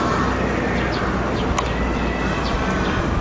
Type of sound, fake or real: real